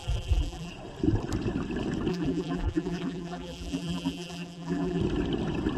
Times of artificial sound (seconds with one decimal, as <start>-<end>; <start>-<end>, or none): 0.0-0.7; 2.1-5.0